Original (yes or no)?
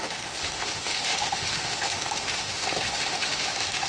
no